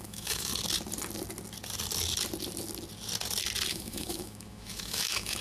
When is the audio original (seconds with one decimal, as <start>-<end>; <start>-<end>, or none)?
0.5-3.7